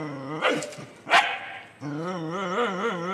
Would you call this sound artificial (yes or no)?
no